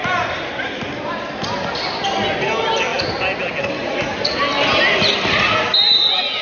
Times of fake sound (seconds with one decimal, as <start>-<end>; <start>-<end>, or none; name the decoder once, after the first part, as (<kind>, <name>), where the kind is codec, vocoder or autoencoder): none